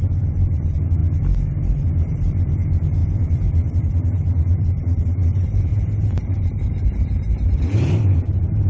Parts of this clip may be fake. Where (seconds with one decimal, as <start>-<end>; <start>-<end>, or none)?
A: 0.0-1.0; 1.7-5.7; 6.4-8.7